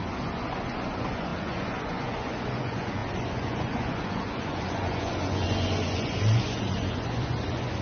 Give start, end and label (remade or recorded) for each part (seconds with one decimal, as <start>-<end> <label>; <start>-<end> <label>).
0.0-7.8 remade